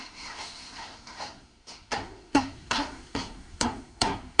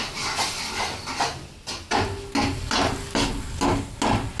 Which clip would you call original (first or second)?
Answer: second